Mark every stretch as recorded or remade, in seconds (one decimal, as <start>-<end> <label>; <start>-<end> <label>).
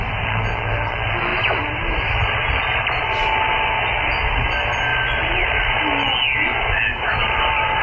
0.0-1.3 recorded; 1.3-3.0 remade; 3.0-4.9 recorded; 4.9-5.8 remade; 5.8-6.9 recorded; 6.9-7.8 remade